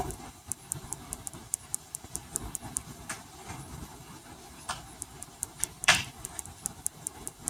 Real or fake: fake